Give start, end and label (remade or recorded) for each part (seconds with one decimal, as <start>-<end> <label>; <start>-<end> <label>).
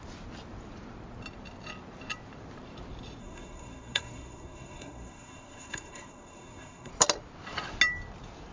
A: 0.0-3.2 recorded; 3.2-6.9 remade; 6.9-8.5 recorded